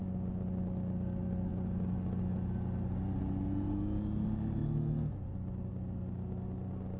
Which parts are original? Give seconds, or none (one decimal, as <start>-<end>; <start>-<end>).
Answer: 0.0-7.0